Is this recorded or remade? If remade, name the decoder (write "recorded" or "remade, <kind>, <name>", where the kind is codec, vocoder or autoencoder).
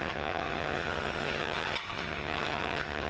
remade, vocoder, HiFi-GAN